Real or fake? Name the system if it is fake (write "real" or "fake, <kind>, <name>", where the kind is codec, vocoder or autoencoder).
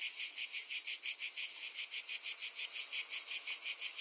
real